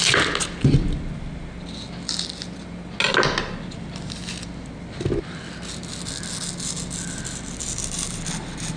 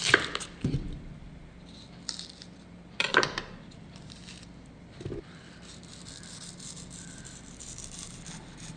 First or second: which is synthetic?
second